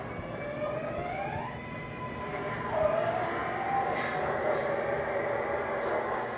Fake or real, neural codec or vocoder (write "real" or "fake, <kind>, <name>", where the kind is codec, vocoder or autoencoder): real